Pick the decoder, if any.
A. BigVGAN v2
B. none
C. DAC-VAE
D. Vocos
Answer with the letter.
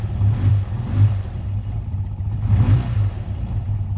A